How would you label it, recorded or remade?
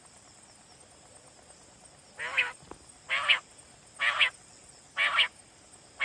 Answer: recorded